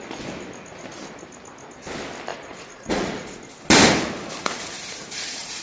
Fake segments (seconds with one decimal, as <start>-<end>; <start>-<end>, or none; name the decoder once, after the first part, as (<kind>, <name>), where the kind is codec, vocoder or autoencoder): 2.3-3.4 (vocoder, Vocos); 4.4-5.6

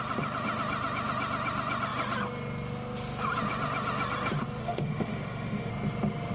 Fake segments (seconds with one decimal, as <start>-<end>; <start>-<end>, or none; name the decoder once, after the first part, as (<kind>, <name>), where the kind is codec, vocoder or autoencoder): 4.6-5.7 (autoencoder, DAC-VAE)

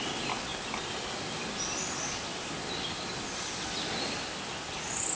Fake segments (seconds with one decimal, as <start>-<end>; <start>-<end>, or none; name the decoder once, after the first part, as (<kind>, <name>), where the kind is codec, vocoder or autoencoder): none

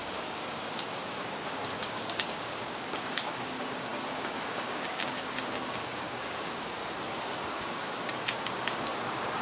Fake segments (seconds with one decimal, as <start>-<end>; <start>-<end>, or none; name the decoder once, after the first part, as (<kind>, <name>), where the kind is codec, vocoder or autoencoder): 0.0-6.8 (codec, DAC); 7.5-9.4